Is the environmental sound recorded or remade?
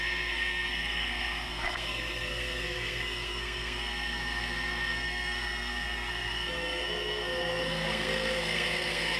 remade